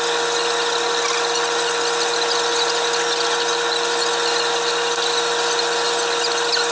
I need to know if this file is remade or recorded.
recorded